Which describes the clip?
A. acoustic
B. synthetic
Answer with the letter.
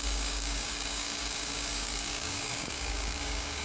B